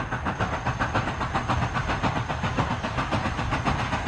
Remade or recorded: recorded